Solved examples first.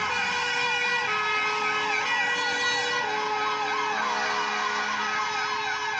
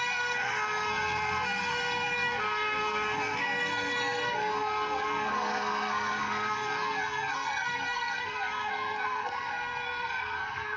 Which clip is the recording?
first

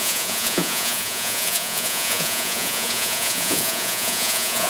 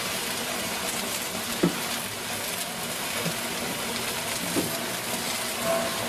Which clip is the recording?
second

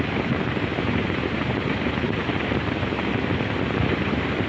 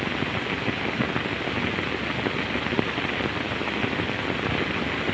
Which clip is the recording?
second